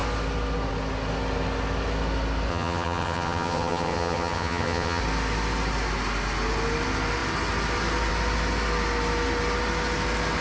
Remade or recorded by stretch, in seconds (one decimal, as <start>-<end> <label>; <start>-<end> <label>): 0.0-2.5 recorded; 2.5-5.0 remade; 5.0-10.4 recorded